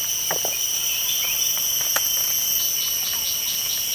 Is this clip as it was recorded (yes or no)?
yes